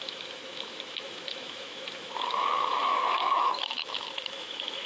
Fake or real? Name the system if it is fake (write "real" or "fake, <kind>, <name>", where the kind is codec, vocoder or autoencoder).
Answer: fake, autoencoder, DAC-VAE